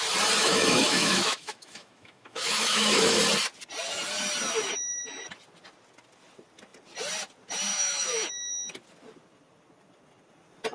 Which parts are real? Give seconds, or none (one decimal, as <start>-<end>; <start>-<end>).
0.0-0.4; 3.2-7.7; 8.3-10.7

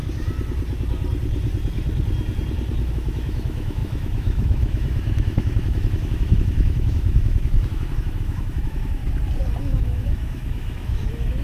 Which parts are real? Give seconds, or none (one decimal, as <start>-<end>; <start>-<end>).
0.0-2.9; 9.0-9.6

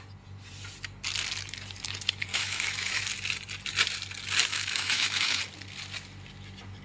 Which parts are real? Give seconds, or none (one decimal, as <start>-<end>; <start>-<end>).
0.0-2.3; 3.0-4.5; 5.4-6.8

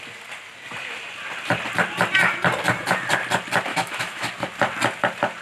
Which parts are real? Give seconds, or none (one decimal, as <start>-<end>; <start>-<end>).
0.0-3.7; 4.3-5.4

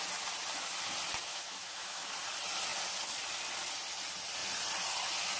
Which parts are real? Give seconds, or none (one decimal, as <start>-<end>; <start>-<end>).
0.0-1.3; 2.1-5.4

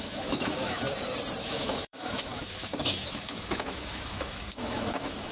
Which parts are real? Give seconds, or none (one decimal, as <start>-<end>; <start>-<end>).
0.8-1.4